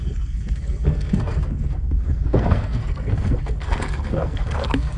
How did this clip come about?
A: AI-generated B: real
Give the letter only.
A